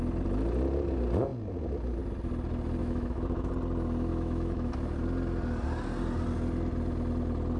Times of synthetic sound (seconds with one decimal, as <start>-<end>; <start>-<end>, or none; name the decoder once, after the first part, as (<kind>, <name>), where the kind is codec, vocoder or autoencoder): 2.8-3.5 (autoencoder, DAC-VAE); 4.1-4.7